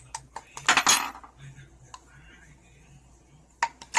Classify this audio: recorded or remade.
recorded